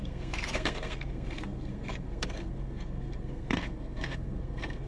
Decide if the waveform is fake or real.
fake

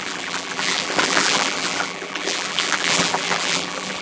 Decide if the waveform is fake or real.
fake